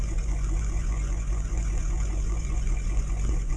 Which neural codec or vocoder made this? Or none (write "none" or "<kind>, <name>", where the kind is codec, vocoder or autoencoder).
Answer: vocoder, Vocos